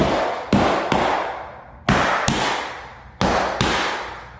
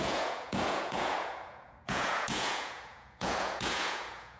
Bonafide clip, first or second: first